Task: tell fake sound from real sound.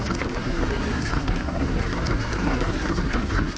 fake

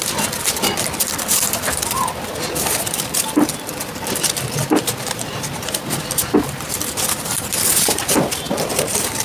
fake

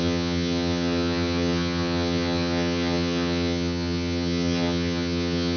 fake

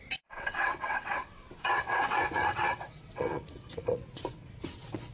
fake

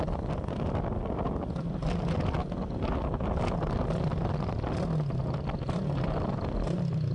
real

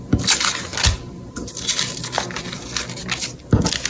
real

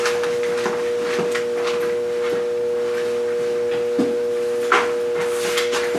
real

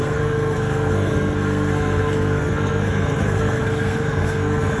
fake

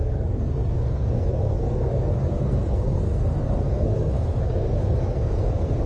fake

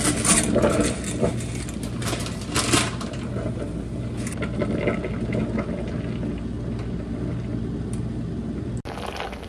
real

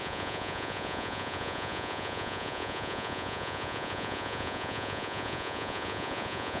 fake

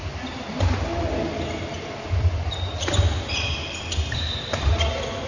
real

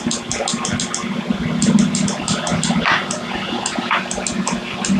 real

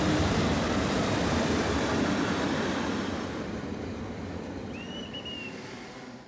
fake